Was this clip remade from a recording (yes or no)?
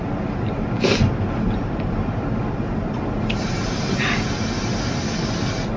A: no